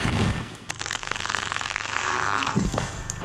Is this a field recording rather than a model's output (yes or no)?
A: no